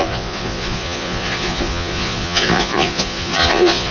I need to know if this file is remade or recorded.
remade